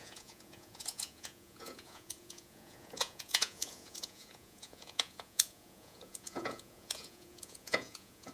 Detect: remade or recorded remade